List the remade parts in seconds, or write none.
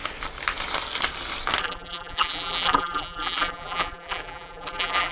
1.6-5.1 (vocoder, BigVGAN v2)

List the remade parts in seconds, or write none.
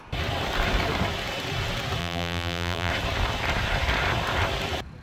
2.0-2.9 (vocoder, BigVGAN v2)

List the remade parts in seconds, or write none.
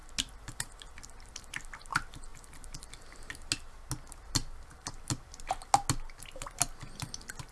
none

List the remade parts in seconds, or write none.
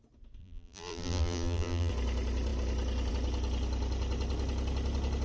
0.4-1.9 (vocoder, BigVGAN v2)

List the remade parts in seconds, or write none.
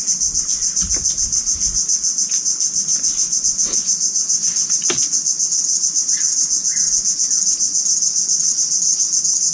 none